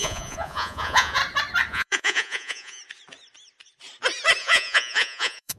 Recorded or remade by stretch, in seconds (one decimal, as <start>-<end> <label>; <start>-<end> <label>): 0.0-1.2 remade; 1.2-1.7 recorded; 1.7-2.8 remade; 2.8-4.4 recorded; 4.4-5.6 remade